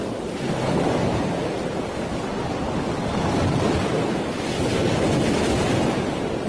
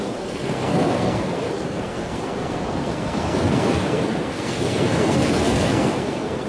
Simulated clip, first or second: second